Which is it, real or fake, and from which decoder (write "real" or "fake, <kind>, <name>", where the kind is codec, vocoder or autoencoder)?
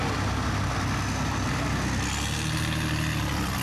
real